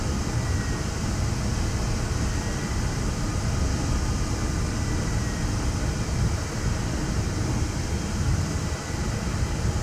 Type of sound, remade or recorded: recorded